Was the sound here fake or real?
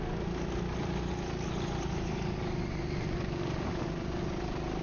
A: real